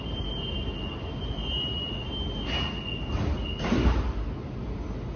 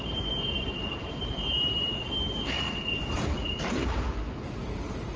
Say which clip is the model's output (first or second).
second